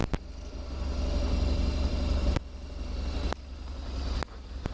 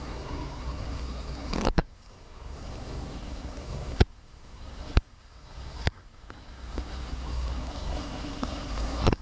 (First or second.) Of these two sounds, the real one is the first